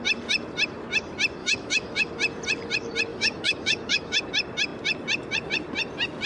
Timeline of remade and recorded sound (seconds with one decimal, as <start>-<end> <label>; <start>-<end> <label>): 0.0-1.4 recorded; 1.4-2.1 remade; 2.1-3.1 recorded; 3.1-4.2 remade; 4.2-6.3 recorded